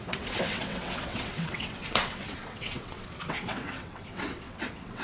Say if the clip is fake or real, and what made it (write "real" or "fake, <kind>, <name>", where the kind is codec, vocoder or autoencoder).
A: fake, vocoder, WaveNeXt